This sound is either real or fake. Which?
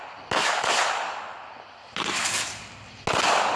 real